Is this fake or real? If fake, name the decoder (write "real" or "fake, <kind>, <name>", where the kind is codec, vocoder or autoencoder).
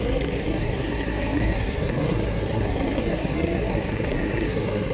fake, codec, SNAC